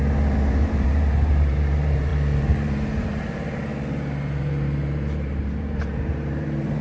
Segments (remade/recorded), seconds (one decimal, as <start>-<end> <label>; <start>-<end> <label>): 0.0-3.7 remade; 3.7-4.4 recorded; 4.4-6.8 remade

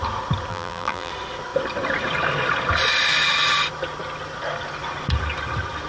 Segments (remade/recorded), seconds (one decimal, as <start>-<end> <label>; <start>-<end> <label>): 0.0-0.5 recorded; 0.5-1.1 remade; 1.1-5.9 recorded